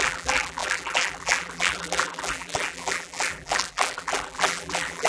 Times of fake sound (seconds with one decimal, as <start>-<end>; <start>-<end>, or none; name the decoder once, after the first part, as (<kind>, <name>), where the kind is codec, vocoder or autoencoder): 0.0-5.1 (vocoder, BigVGAN v2)